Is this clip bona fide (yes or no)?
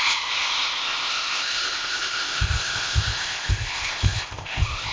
no